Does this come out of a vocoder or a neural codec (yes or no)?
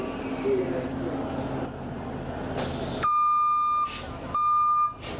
no